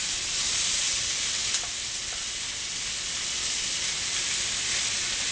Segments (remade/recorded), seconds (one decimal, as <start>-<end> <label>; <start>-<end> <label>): 0.0-5.3 recorded